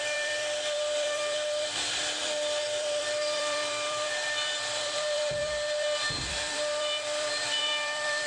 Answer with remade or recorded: remade